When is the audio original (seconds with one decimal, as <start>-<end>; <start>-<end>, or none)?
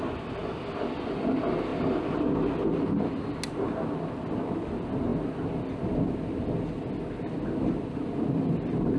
0.0-9.0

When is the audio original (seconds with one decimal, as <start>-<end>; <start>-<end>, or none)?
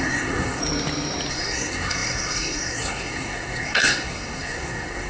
0.6-1.3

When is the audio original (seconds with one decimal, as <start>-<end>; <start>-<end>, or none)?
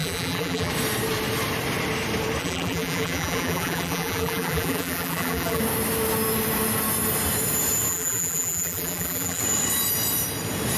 0.7-2.4; 5.6-7.9; 9.4-10.8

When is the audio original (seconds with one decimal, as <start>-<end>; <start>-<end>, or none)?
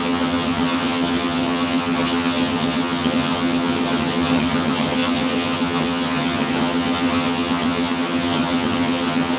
none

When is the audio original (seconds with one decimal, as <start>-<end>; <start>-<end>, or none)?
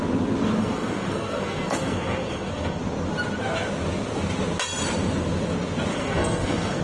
0.0-0.6; 2.8-5.9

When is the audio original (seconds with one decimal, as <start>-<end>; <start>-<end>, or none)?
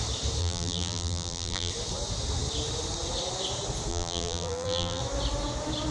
0.0-0.4; 1.7-3.9; 5.0-5.9